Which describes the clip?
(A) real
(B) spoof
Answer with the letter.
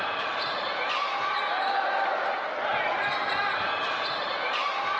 A